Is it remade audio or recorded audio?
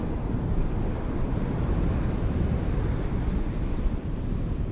recorded